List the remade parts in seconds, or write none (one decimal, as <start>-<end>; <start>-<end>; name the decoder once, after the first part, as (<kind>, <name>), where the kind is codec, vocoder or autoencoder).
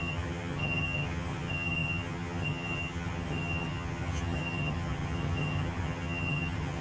0.0-6.8 (vocoder, HiFi-GAN)